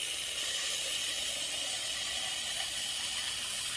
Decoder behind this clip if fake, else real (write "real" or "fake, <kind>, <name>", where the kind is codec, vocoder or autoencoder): real